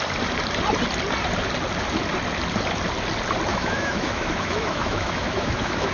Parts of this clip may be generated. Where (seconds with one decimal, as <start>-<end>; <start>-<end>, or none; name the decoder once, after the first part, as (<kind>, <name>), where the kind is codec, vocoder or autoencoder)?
3.5-5.9 (autoencoder, DAC-VAE)